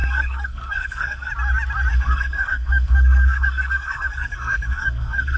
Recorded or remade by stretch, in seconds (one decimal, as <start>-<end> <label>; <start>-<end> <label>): 0.0-1.3 remade; 1.3-1.9 recorded; 1.9-5.4 remade